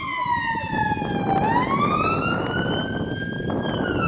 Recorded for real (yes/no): yes